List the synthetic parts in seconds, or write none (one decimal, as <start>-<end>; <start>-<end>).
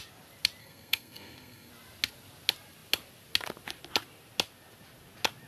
0.6-1.7